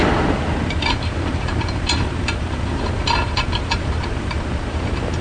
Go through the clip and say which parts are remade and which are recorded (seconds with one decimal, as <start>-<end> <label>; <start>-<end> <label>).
0.0-5.2 remade